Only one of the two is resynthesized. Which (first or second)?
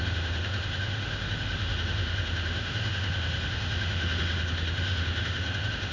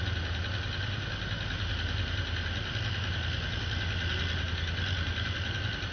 first